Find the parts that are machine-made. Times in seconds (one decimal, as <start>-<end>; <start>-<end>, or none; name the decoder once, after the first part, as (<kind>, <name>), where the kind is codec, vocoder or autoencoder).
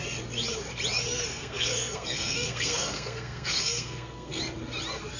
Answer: 1.3-4.4 (codec, SNAC)